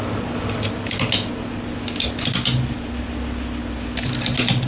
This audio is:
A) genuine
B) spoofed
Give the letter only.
A